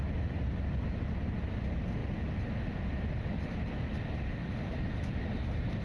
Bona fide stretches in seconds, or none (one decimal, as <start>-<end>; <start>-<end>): 0.0-5.8